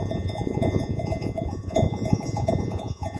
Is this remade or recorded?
remade